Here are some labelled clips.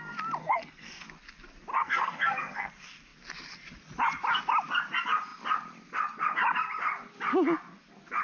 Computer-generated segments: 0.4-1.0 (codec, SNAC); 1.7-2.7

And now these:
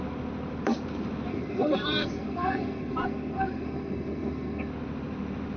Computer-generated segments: 1.3-4.7 (codec, SNAC)

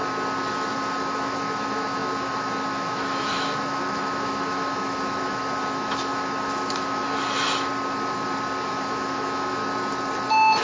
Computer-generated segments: 0.7-7.0 (autoencoder, DAC-VAE); 8.6-9.6